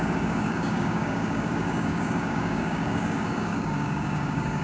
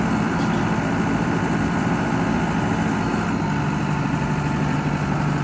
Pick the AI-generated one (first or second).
first